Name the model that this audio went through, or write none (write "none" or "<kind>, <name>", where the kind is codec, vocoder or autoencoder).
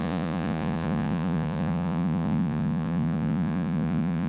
vocoder, Vocos